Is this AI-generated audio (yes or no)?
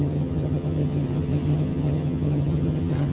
yes